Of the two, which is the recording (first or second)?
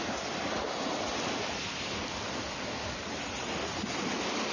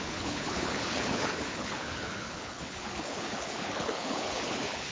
first